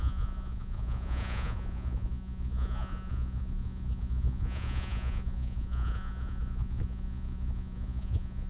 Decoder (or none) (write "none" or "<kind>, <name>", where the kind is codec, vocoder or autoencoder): vocoder, Vocos